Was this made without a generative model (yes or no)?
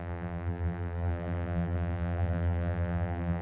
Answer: no